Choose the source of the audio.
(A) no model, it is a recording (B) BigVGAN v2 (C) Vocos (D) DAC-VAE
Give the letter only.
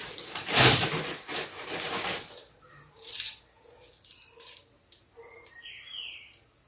B